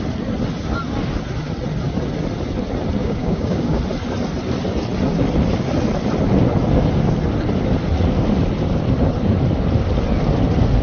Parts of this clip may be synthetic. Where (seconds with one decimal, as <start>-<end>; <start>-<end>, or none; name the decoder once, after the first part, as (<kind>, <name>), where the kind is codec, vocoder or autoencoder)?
3.0-3.8 (codec, DAC)